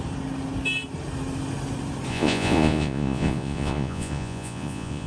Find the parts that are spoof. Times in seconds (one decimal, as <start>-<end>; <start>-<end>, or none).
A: 2.1-5.1